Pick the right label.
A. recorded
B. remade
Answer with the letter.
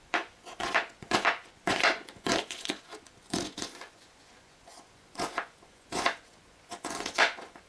B